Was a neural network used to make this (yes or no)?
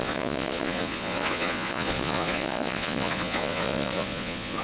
yes